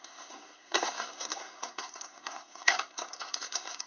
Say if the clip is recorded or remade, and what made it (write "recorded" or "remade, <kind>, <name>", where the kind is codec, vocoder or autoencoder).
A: remade, codec, SNAC